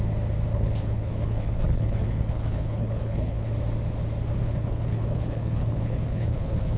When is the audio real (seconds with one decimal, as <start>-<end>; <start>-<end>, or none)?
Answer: 0.0-0.5; 3.5-4.4